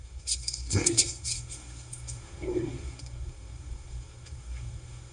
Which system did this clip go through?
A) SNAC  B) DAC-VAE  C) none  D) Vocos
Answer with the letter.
A